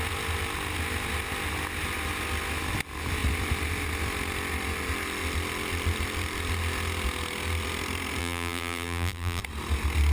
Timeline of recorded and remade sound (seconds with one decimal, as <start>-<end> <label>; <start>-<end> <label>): 0.0-8.2 recorded; 8.2-9.4 remade; 9.4-10.1 recorded